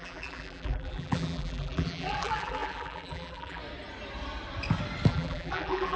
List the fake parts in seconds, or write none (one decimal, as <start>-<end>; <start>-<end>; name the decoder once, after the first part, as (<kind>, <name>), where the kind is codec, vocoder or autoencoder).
0.0-3.6 (vocoder, BigVGAN v2); 5.1-6.0